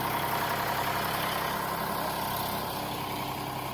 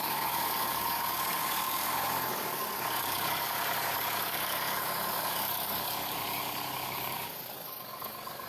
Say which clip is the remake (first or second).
second